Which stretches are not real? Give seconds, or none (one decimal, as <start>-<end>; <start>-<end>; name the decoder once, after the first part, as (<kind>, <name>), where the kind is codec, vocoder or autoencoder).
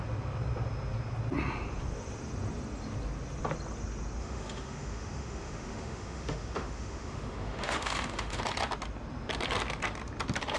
4.2-8.4 (autoencoder, DAC-VAE)